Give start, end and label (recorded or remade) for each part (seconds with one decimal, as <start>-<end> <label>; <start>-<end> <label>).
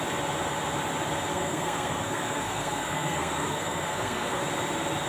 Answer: 0.0-1.3 recorded; 1.3-4.4 remade; 4.4-5.1 recorded